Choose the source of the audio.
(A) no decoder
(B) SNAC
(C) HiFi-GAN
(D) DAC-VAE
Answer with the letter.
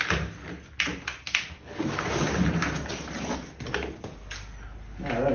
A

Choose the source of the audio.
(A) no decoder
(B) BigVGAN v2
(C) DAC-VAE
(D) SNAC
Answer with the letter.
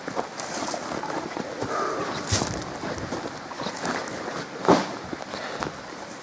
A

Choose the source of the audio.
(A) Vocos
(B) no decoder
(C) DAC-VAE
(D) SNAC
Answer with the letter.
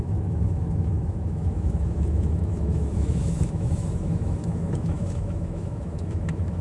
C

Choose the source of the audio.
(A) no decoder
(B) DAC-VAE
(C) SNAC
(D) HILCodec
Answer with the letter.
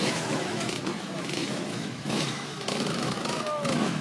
B